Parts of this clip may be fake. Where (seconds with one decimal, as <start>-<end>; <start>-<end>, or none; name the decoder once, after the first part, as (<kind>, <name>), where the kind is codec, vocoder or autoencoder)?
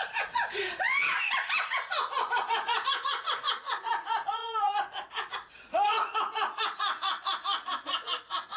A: 0.0-8.6 (vocoder, Vocos)